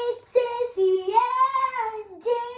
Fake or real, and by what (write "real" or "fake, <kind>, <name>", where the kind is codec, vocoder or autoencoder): real